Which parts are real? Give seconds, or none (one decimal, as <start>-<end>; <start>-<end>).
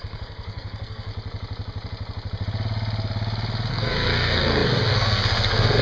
1.1-3.7